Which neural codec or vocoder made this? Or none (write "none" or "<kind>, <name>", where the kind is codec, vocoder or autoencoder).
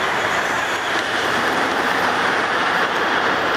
vocoder, BigVGAN v2